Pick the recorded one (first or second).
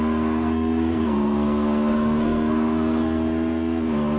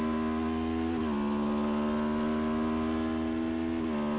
second